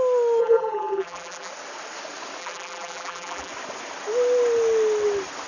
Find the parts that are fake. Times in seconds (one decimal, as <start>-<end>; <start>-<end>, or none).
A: 0.4-1.5; 2.4-3.5